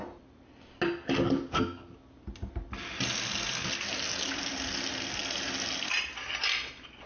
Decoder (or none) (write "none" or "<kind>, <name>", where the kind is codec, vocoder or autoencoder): none